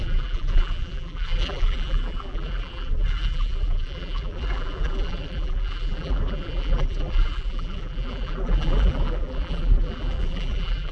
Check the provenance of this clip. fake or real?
fake